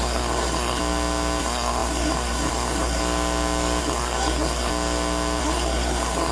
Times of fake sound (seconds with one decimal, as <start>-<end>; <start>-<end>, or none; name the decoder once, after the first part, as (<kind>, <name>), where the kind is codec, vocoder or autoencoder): 0.0-0.8 (codec, SNAC); 1.4-3.0; 3.8-4.7; 5.4-6.3

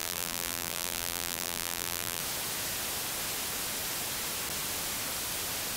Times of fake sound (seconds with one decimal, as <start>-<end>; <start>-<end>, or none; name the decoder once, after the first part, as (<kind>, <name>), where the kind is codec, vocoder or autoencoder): 0.0-2.2 (vocoder, BigVGAN v2)

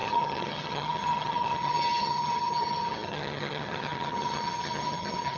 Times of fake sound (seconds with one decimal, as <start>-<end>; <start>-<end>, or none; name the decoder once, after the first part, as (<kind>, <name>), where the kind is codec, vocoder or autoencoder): 0.0-5.4 (vocoder, HiFi-GAN)